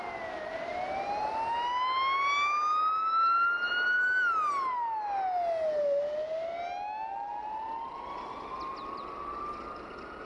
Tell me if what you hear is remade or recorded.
recorded